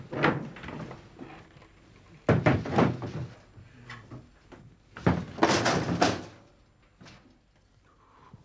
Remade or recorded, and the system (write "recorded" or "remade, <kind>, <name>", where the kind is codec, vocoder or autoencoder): recorded